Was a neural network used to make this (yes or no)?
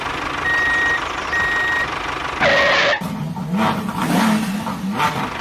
no